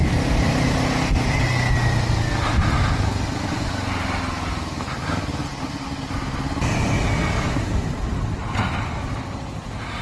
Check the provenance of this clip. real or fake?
real